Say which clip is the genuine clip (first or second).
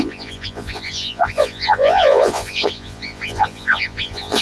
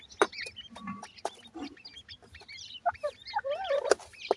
second